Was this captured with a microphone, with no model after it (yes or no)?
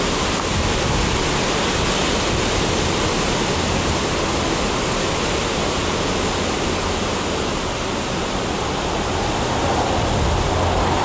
yes